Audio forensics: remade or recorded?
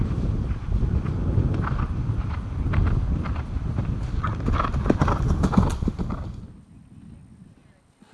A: recorded